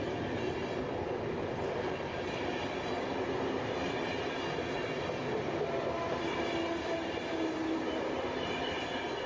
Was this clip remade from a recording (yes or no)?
no